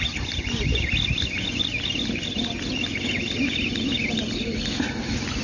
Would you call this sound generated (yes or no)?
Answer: no